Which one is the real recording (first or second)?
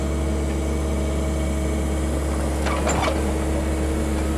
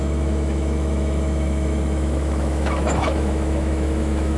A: first